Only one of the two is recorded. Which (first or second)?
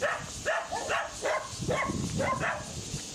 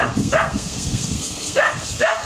first